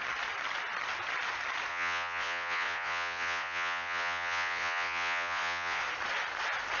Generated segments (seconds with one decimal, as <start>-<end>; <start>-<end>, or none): 1.7-5.8